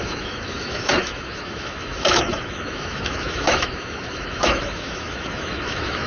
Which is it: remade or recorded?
remade